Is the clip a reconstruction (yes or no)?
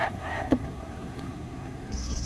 yes